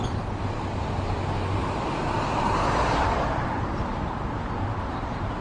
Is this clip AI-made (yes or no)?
no